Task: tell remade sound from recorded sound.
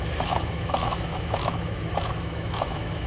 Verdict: remade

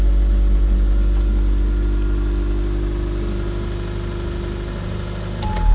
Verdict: recorded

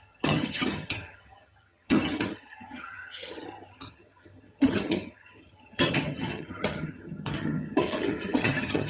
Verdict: remade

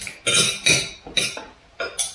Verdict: recorded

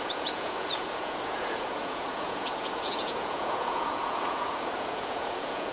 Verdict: remade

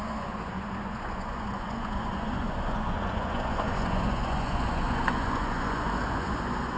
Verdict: remade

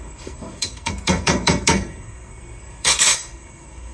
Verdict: remade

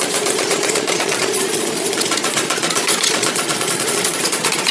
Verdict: remade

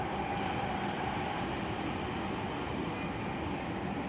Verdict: recorded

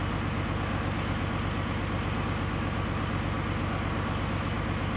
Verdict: recorded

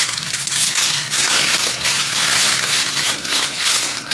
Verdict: remade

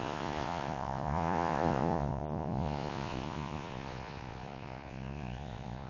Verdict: remade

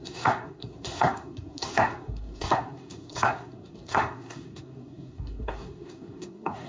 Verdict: remade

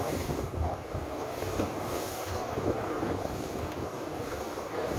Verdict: remade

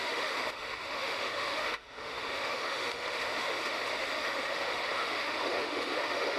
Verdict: remade